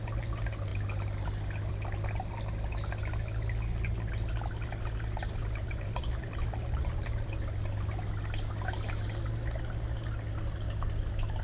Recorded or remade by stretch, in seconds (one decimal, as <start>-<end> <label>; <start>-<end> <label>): 0.0-5.4 recorded; 5.4-7.3 remade; 7.3-11.4 recorded